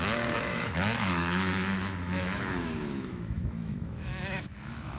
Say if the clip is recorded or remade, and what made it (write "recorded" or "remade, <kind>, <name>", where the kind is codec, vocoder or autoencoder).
remade, autoencoder, DAC-VAE